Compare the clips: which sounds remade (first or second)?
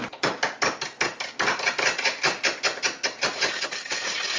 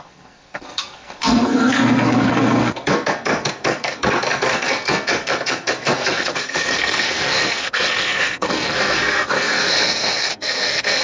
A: second